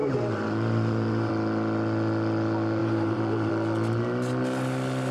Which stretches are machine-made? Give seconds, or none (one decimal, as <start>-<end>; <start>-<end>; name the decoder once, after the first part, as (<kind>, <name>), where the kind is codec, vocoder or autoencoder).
0.0-1.3 (vocoder, BigVGAN v2); 2.8-3.5